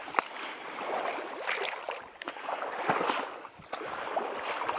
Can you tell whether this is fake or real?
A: real